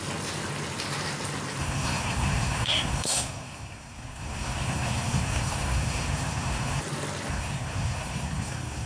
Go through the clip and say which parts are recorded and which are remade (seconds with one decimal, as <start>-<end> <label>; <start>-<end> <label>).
0.0-1.6 recorded; 1.6-6.8 remade; 6.8-7.3 recorded; 7.3-8.9 remade

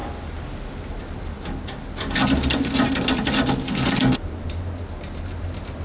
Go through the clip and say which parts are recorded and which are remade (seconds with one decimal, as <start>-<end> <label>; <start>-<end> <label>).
0.0-5.8 recorded

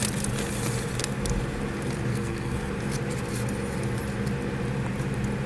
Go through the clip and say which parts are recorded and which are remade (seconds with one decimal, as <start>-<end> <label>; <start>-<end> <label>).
0.0-2.1 recorded; 2.1-2.7 remade; 2.7-5.5 recorded

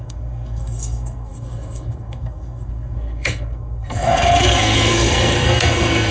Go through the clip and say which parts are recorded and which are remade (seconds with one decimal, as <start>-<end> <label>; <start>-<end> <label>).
0.0-6.1 remade

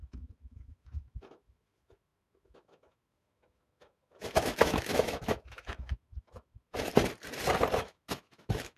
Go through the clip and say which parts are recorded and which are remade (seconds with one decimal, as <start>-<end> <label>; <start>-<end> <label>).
0.0-6.9 remade; 6.9-7.8 recorded; 7.8-8.8 remade